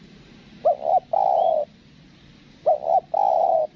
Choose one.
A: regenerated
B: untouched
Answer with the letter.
B